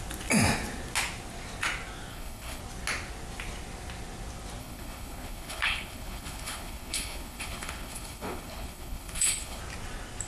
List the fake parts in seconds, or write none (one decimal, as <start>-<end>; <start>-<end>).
2.1-2.6; 4.6-9.6